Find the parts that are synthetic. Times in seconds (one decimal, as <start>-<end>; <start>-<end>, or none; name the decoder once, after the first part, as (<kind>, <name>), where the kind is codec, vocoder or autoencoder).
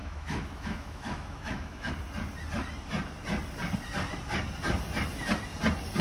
0.0-1.9 (autoencoder, DAC-VAE)